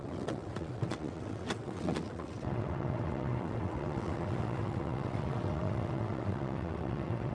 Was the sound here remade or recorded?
remade